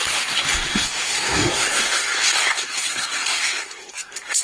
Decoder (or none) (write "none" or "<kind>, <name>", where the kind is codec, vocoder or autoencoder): codec, SNAC